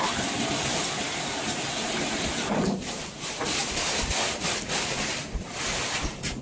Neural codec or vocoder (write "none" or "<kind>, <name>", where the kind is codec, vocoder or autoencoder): vocoder, BigVGAN v2